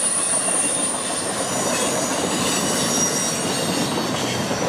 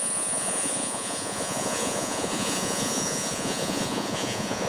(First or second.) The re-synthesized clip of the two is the second